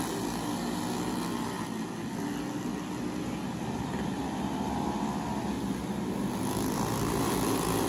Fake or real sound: real